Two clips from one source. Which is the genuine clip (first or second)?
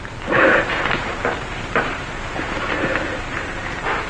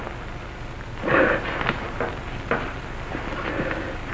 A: second